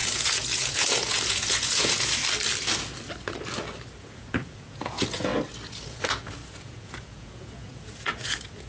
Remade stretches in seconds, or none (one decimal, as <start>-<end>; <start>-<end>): 0.0-2.2; 4.0-5.3; 5.8-8.7